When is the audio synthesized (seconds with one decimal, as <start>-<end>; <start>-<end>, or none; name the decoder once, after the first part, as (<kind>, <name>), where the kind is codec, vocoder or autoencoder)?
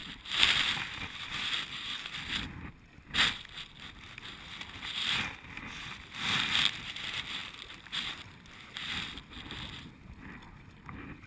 none